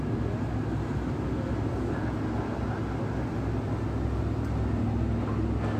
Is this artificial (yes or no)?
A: no